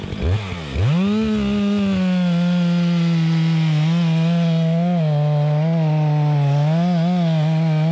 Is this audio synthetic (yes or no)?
no